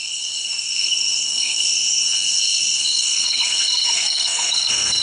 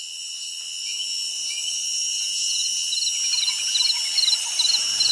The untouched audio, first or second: second